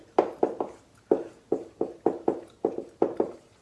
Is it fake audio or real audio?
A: real